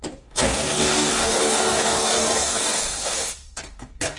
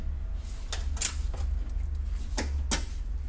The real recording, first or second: second